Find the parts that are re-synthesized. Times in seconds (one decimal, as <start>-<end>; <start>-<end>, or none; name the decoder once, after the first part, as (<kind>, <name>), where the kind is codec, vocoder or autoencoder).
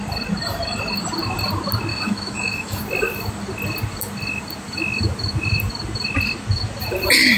1.9-2.8 (autoencoder, DAC-VAE)